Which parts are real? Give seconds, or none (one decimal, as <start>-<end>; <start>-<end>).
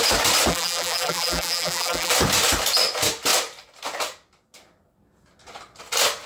0.0-0.5; 2.1-6.3